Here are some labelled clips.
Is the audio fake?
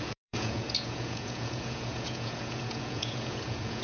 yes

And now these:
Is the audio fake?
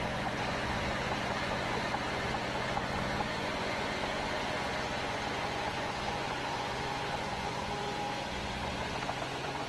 yes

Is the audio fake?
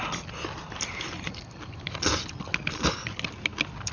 no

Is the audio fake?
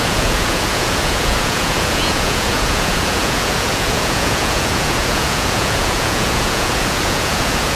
yes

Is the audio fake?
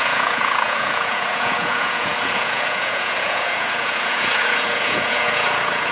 yes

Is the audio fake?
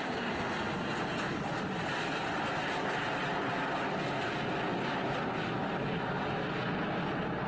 no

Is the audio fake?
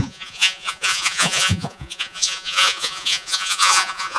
yes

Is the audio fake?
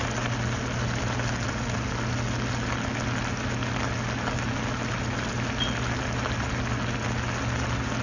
no